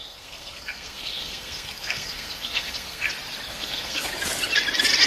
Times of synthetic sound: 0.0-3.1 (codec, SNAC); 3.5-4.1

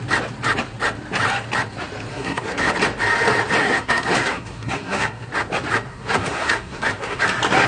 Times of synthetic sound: 2.1-2.7 (codec, SNAC); 3.6-5.3; 5.9-7.2

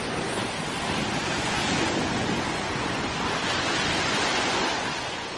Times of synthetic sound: 0.0-0.4 (vocoder, Vocos); 1.2-5.4

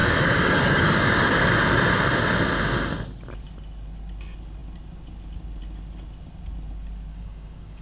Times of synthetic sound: 0.0-1.4 (codec, DAC); 7.1-7.8